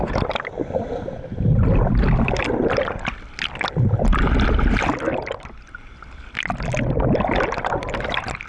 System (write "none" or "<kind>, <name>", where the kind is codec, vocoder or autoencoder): none